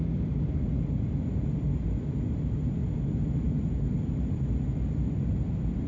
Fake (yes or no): no